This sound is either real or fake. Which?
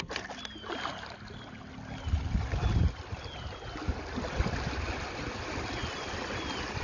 real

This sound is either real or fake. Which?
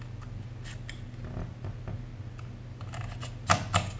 real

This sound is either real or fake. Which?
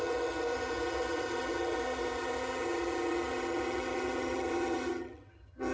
fake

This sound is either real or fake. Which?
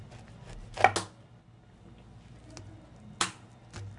real